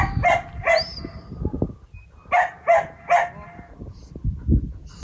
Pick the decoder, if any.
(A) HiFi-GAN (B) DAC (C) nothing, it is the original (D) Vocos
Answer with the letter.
C